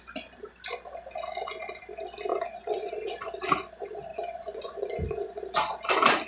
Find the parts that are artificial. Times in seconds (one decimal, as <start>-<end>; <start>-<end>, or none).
2.3-2.9; 4.1-5.4